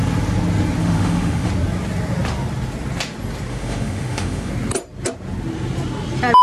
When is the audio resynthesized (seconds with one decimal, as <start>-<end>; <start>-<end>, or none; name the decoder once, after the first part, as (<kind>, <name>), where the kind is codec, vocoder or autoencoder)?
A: 0.8-1.5 (autoencoder, DAC-VAE); 3.5-4.5